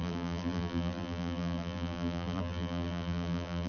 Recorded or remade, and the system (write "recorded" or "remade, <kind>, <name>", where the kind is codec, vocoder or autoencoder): remade, vocoder, BigVGAN v2